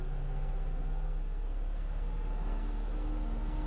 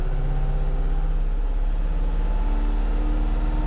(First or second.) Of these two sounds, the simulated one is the first